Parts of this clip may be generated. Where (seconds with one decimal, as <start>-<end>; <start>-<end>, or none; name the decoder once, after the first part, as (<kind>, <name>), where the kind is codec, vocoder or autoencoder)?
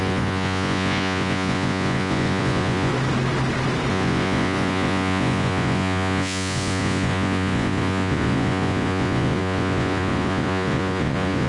0.0-2.9 (vocoder, Vocos); 3.9-11.5